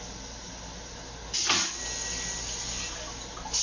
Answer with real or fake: real